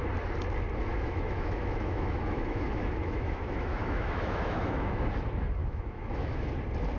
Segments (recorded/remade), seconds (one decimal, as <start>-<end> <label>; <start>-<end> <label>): 0.0-0.9 recorded; 0.9-5.1 remade; 5.1-5.6 recorded; 5.6-6.5 remade; 6.5-7.0 recorded